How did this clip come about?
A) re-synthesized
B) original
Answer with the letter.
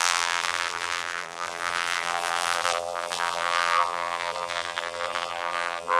A